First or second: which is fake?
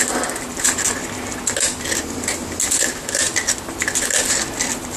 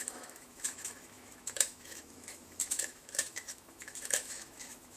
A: second